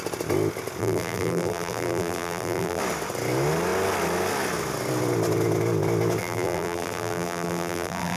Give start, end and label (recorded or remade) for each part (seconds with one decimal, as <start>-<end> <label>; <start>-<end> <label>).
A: 0.0-0.8 recorded; 0.8-2.8 remade; 2.8-6.2 recorded; 6.2-8.2 remade